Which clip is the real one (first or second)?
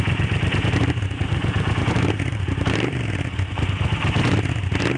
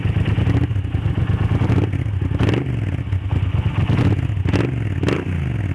second